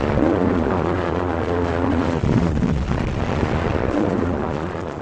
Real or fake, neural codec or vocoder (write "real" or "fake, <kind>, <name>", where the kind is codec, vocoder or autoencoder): fake, vocoder, Vocos